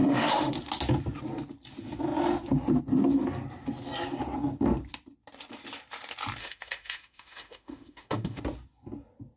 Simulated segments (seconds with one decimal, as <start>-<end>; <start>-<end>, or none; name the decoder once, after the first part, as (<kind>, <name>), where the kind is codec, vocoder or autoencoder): 0.0-0.5 (autoencoder, DAC-VAE); 6.4-8.4